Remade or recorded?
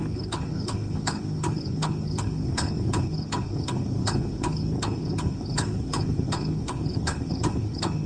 remade